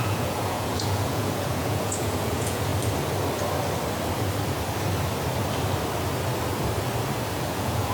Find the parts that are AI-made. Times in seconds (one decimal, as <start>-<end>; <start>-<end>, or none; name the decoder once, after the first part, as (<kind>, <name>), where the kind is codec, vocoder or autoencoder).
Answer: 0.0-2.7 (vocoder, Vocos); 7.4-7.9